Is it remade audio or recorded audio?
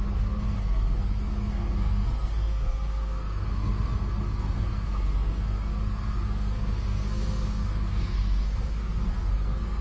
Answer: remade